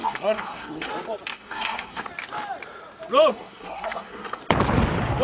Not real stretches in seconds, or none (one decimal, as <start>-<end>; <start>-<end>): 0.0-0.9; 1.3-2.1; 3.3-4.4

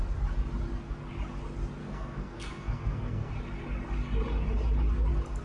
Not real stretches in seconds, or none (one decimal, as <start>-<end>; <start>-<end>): 1.8-3.3

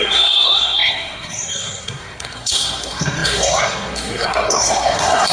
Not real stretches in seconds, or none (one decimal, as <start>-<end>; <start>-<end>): 0.0-5.3

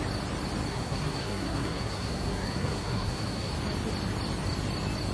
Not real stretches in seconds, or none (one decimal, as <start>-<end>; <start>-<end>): 0.7-3.5

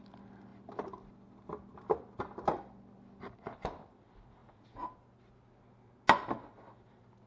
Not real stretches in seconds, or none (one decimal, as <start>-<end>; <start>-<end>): none

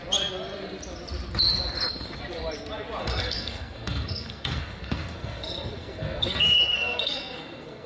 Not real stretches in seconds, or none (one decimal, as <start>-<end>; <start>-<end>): 3.0-7.9

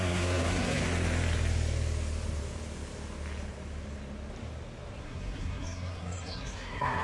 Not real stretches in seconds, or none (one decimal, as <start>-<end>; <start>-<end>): 0.0-0.8; 5.0-7.0

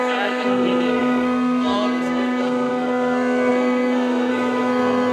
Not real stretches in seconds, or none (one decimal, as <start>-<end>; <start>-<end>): 0.0-5.1